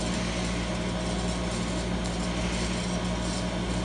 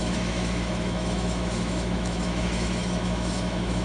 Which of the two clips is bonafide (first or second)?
first